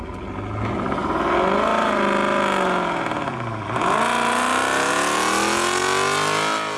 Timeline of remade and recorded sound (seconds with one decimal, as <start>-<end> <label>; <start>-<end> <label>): 0.0-6.8 recorded